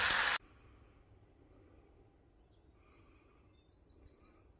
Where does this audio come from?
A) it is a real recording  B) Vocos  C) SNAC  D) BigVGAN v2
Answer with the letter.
A